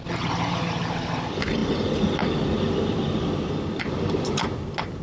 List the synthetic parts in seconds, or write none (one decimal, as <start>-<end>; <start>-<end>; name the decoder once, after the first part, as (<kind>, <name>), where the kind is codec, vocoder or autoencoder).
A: none